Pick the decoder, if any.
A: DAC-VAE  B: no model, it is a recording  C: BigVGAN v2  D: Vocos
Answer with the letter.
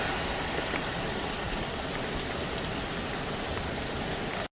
B